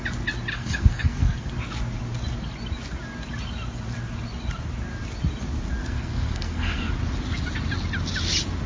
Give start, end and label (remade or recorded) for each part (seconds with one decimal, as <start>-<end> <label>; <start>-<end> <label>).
0.0-0.5 recorded; 0.5-1.5 remade; 1.5-5.8 recorded; 5.8-6.9 remade; 6.9-8.7 recorded